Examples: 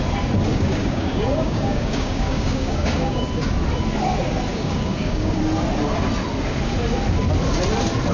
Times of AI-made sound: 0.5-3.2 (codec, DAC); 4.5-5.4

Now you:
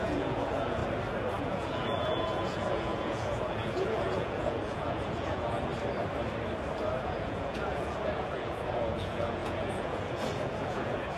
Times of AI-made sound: 0.0-0.8 (vocoder, Vocos); 1.4-5.7; 7.0-11.2

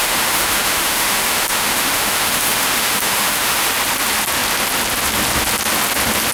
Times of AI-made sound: 0.0-3.7 (autoencoder, DAC-VAE)

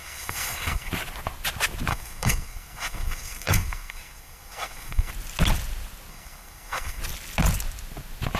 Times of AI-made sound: 0.0-0.9 (codec, SNAC); 1.9-5.1; 6.1-7.0

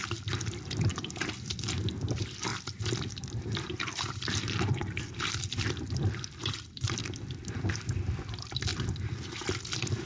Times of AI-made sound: 0.9-1.5 (vocoder, BigVGAN v2); 2.5-7.2; 8.7-9.3

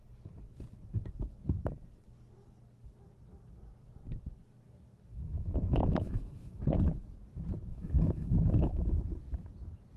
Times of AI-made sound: 5.1-6.6 (autoencoder, DAC-VAE); 7.7-9.0